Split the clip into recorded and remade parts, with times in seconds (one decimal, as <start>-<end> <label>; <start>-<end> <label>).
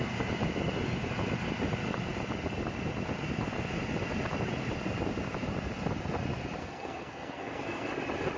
0.0-6.6 recorded; 6.6-7.9 remade; 7.9-8.4 recorded